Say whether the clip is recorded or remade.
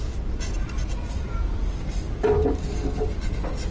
recorded